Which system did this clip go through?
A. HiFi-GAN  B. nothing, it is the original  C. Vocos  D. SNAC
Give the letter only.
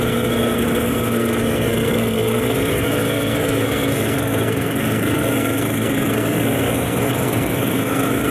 D